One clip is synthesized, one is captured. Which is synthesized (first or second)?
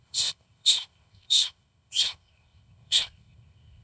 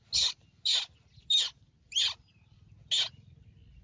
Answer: first